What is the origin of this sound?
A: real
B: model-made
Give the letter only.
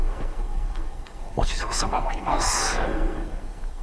B